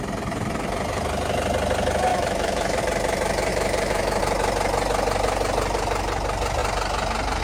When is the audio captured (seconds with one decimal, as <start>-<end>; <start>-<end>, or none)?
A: 0.0-2.1; 2.8-3.5; 4.2-7.4